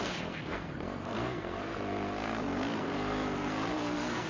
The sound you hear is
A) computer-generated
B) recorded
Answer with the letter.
A